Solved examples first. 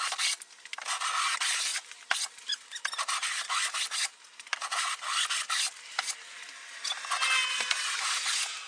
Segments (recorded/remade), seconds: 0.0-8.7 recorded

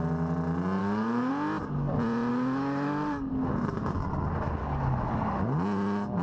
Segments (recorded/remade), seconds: 0.0-0.8 recorded; 0.8-1.3 remade; 1.3-2.3 recorded; 2.3-3.3 remade; 3.3-4.6 recorded; 4.6-5.4 remade; 5.4-6.2 recorded

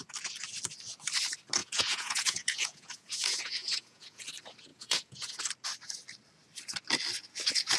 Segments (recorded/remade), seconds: 0.0-1.6 recorded; 1.6-4.2 remade; 4.2-4.7 recorded; 4.7-5.4 remade; 5.4-7.8 recorded

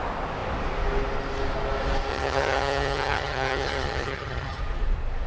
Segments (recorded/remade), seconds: 0.0-2.1 recorded; 2.1-4.6 remade; 4.6-5.3 recorded

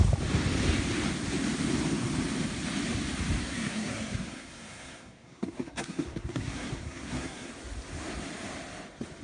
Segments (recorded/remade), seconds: 0.0-3.4 recorded; 3.4-7.5 remade; 7.5-9.2 recorded

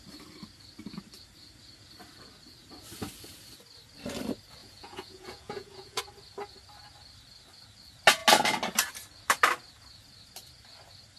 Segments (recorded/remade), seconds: 0.0-4.6 recorded; 4.6-6.0 remade; 6.0-11.2 recorded